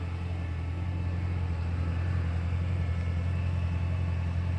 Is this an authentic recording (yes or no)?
yes